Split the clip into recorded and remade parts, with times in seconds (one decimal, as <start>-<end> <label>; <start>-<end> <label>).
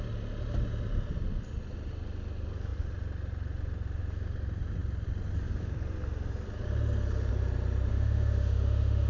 0.0-7.9 recorded; 7.9-9.1 remade